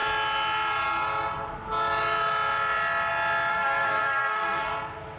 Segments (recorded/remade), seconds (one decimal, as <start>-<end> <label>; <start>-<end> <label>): 0.0-3.5 recorded; 3.5-4.7 remade; 4.7-5.2 recorded